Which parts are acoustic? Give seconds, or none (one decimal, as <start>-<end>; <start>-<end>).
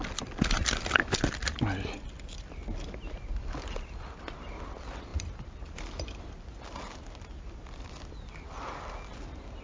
0.0-9.6